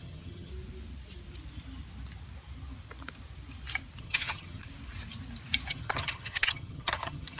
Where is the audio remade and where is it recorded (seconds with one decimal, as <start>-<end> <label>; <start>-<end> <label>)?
0.0-0.5 remade; 0.5-4.0 recorded; 4.0-4.6 remade; 4.6-5.7 recorded; 5.7-7.4 remade